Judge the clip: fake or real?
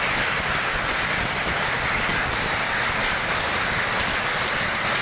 real